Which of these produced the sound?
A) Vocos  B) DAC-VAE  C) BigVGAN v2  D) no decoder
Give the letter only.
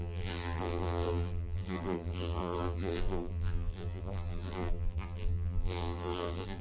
C